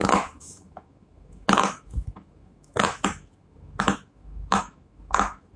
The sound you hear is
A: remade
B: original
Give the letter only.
A